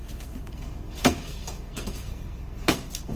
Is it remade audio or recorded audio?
remade